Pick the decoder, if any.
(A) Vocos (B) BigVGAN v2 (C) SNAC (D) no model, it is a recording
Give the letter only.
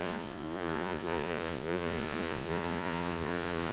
A